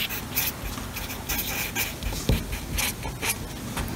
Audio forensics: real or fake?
real